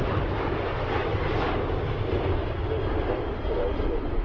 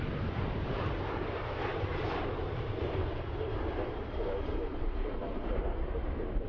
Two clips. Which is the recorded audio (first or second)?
first